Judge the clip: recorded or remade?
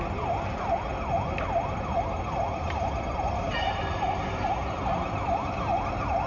recorded